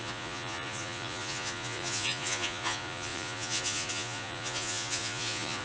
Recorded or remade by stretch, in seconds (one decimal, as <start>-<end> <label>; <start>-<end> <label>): 0.0-5.6 remade